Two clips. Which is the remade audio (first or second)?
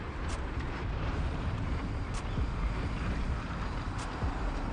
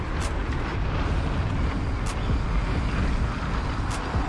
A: first